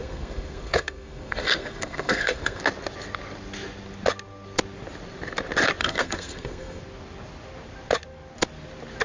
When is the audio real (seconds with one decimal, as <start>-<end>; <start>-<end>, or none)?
2.6-5.8; 6.8-9.0

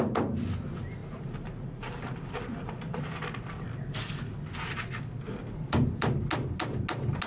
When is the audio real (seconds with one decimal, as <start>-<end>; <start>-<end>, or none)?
0.0-7.3

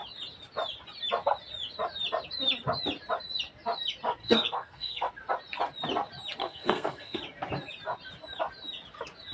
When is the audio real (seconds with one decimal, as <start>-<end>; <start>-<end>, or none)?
0.0-4.2; 5.1-6.4; 7.2-9.3

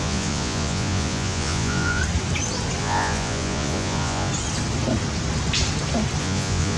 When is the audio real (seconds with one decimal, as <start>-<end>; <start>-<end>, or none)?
2.0-2.8; 4.3-6.2

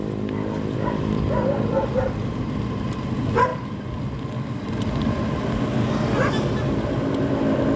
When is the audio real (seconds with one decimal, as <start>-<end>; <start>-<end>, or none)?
0.0-7.8

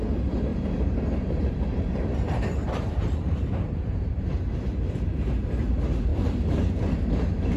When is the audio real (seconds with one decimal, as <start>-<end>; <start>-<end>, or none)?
0.0-0.5; 4.3-7.6